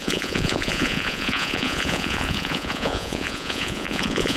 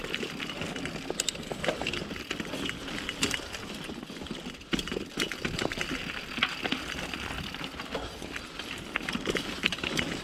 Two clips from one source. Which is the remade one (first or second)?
first